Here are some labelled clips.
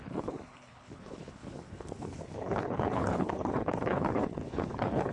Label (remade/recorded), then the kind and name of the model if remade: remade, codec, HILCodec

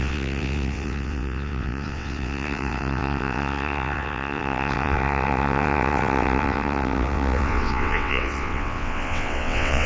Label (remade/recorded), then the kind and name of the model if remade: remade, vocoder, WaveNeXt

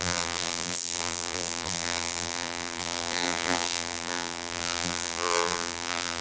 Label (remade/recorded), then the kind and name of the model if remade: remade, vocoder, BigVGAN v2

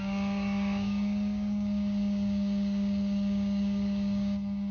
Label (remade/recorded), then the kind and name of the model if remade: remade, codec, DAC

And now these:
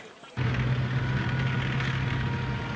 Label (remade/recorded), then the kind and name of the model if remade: recorded